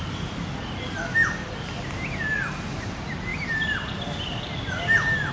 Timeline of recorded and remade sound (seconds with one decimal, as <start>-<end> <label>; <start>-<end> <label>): 0.0-5.3 recorded